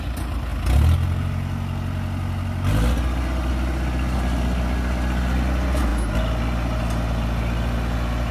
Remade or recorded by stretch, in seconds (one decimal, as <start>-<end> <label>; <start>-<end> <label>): 0.0-8.3 recorded